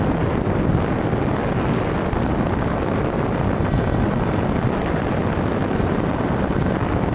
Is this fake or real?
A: real